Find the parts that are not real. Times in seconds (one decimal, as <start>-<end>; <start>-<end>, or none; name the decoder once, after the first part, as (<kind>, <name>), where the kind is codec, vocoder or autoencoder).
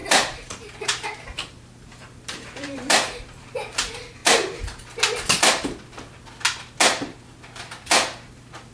0.0-4.2 (vocoder, BigVGAN v2)